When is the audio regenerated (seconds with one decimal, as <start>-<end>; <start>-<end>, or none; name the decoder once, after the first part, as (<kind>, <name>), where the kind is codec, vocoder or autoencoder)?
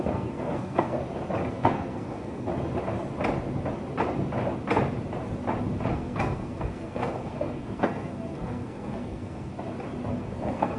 0.0-1.0 (codec, SNAC); 1.5-2.5; 5.9-9.5; 10.1-10.8